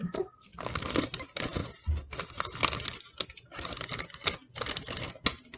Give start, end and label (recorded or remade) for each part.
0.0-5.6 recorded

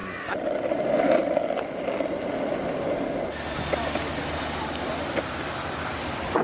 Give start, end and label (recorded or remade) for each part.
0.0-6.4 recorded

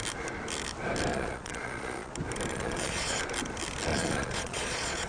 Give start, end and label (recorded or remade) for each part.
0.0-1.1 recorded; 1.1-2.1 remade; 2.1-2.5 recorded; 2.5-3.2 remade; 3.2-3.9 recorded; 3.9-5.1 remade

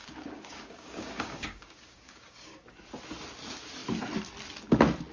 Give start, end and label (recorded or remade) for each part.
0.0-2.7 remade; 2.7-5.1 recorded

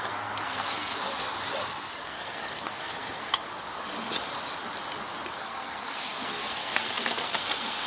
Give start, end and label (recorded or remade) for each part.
0.0-1.1 remade; 1.1-2.0 recorded; 2.0-3.5 remade; 3.5-5.3 recorded; 5.3-7.9 remade

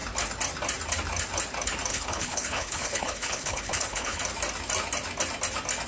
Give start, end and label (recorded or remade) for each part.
0.0-1.9 recorded; 1.9-4.2 remade; 4.2-5.9 recorded

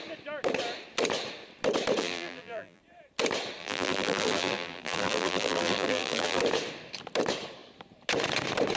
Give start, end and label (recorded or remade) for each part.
0.0-2.0 recorded; 2.0-2.8 remade; 2.8-3.6 recorded; 3.6-6.4 remade; 6.4-8.8 recorded

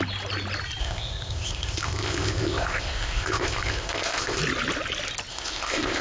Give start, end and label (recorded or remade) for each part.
0.0-0.8 recorded; 0.8-4.4 remade; 4.4-5.3 recorded; 5.3-6.0 remade